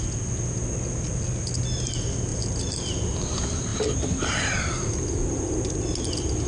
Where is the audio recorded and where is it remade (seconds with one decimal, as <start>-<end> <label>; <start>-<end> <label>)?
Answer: 0.0-6.5 recorded